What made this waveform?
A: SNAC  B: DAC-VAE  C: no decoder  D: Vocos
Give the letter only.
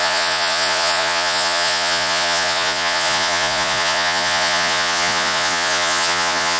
D